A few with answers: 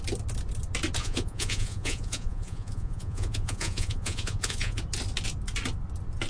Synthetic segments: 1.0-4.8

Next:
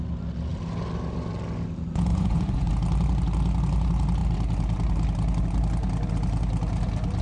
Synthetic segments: 2.1-2.7